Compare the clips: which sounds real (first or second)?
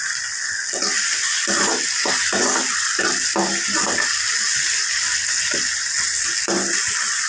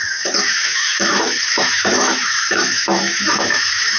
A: first